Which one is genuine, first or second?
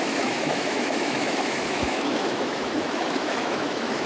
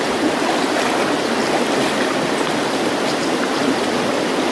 second